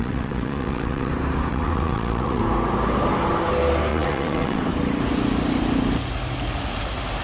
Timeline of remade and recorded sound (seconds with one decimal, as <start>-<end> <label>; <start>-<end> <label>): 0.0-1.1 remade; 1.1-1.5 recorded; 1.5-2.4 remade; 2.4-3.9 recorded; 3.9-4.6 remade; 4.6-7.2 recorded